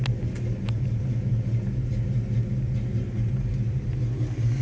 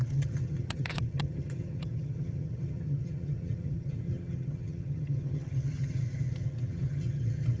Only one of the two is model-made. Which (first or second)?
second